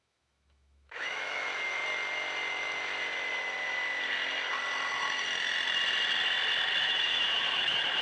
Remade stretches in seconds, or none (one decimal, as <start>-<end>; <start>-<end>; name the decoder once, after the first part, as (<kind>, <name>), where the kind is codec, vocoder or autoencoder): 0.0-1.8 (autoencoder, DAC-VAE); 2.5-2.9; 6.8-8.0